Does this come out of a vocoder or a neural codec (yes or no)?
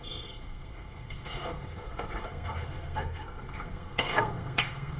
yes